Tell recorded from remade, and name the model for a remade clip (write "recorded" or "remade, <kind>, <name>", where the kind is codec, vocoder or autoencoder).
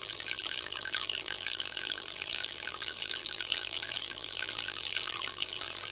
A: remade, vocoder, BigVGAN v2